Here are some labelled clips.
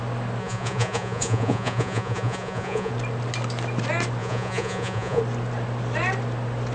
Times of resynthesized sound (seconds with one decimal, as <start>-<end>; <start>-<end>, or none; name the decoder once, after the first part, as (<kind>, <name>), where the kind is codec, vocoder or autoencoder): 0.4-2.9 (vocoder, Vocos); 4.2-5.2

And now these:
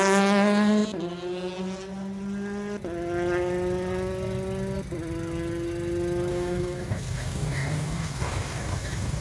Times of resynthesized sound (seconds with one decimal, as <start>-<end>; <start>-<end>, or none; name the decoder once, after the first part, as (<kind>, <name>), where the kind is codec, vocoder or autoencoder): 6.3-9.2 (codec, DAC)

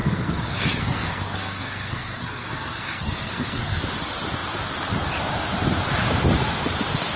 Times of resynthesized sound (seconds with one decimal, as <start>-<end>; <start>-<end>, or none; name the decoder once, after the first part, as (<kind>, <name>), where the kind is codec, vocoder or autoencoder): 0.0-3.8 (codec, SNAC)

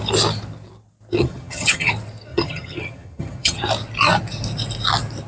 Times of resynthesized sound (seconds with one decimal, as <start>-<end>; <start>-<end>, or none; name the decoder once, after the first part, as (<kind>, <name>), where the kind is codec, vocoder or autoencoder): 1.2-1.9 (vocoder, HiFi-GAN); 2.3-3.6

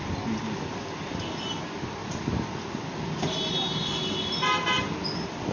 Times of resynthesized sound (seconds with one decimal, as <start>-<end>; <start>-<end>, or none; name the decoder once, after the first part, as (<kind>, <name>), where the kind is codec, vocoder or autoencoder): none

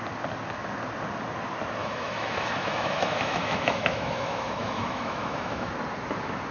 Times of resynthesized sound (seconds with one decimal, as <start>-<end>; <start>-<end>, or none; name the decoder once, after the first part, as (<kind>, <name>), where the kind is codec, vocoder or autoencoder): 1.8-5.7 (autoencoder, DAC-VAE)